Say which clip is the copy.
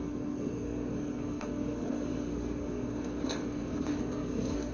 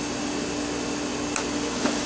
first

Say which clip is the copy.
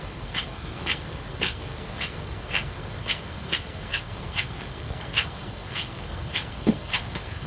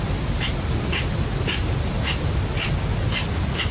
first